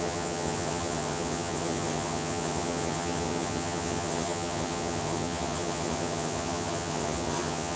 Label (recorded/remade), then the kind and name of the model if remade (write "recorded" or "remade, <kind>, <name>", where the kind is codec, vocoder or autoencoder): remade, vocoder, HiFi-GAN